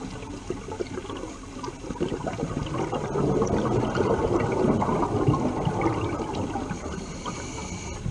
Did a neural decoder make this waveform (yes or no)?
no